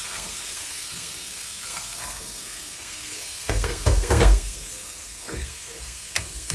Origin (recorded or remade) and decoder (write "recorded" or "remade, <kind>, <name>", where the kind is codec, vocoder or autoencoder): remade, codec, SNAC